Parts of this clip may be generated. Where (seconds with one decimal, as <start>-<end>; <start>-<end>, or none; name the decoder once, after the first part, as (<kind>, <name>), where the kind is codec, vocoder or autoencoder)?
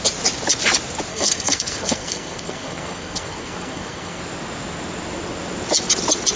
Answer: 1.1-4.2 (codec, SNAC)